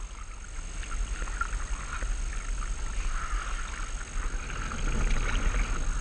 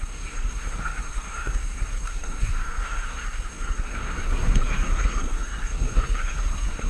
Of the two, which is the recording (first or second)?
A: first